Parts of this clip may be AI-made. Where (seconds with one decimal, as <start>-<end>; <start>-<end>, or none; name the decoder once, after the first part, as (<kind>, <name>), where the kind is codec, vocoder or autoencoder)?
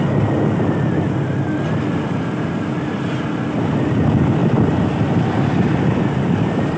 none